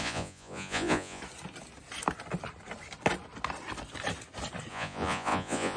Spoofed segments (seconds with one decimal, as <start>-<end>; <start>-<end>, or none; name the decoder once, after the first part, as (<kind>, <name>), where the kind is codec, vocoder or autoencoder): 0.0-1.2 (vocoder, Vocos); 4.7-5.8